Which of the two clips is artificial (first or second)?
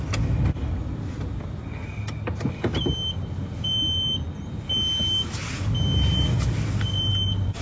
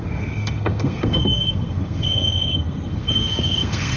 second